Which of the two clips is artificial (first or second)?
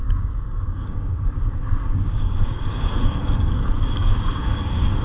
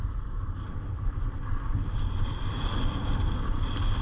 first